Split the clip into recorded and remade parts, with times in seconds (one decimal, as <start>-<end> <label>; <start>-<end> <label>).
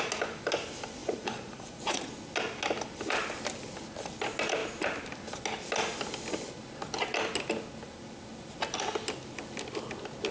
0.0-1.0 recorded; 1.0-2.1 remade; 2.1-10.3 recorded